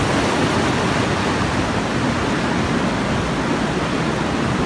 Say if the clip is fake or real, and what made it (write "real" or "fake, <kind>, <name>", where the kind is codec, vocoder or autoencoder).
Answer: real